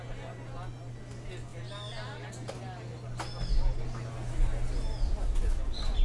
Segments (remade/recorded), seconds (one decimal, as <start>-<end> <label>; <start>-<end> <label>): 0.0-6.0 recorded